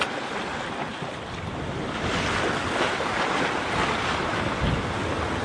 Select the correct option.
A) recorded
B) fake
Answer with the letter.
A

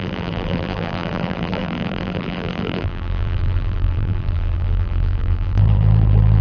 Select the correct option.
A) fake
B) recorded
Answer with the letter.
A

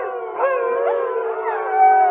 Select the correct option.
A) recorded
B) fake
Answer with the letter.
A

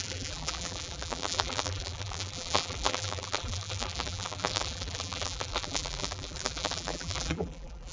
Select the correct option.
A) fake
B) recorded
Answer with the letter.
A